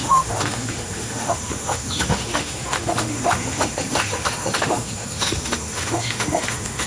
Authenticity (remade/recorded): remade